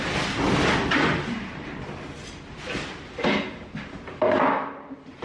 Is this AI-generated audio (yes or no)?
no